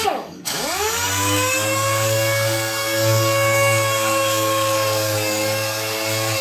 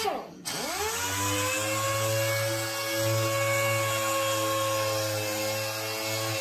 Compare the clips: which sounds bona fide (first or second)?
second